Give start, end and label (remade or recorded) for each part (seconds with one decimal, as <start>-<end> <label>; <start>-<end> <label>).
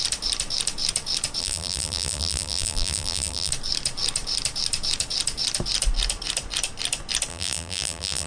0.0-1.4 recorded; 1.4-3.5 remade; 3.5-7.3 recorded; 7.3-8.3 remade